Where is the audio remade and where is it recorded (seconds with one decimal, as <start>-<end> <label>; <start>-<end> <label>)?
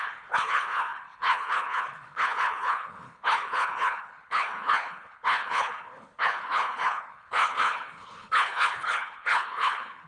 0.0-10.1 remade